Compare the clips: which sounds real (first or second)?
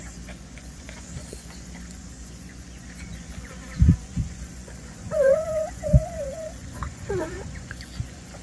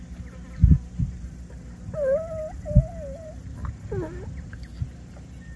second